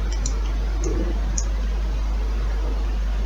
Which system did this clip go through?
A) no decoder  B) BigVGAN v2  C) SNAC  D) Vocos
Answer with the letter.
A